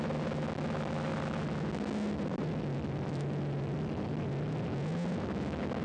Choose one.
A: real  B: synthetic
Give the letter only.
A